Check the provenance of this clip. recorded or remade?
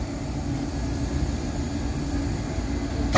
recorded